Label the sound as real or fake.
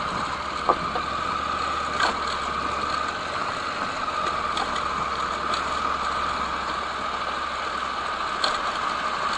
real